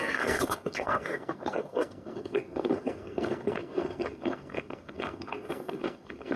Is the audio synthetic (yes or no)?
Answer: yes